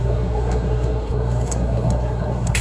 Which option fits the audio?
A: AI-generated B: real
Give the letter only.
A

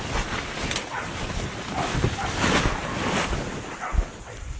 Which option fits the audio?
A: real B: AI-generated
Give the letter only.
A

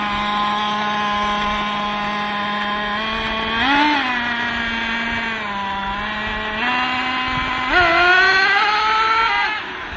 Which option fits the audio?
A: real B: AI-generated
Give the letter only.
A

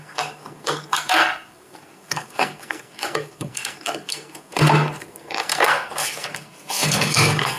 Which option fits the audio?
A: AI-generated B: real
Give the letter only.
A